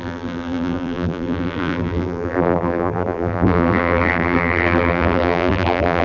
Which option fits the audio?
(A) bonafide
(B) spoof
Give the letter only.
B